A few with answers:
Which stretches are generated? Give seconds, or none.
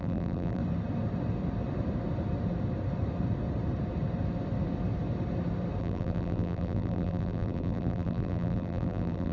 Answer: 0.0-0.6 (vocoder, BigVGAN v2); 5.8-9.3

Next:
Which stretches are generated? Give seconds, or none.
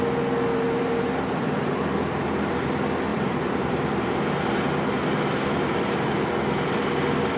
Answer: 0.5-2.5 (vocoder, BigVGAN v2); 3.1-4.2; 5.3-6.3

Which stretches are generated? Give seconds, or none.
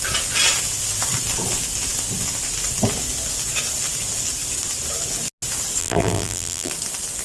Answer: 5.8-6.7 (vocoder, BigVGAN v2)